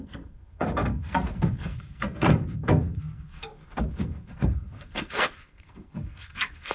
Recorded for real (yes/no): no